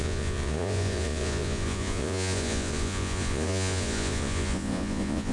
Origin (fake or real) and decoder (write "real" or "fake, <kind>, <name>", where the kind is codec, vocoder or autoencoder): fake, vocoder, Vocos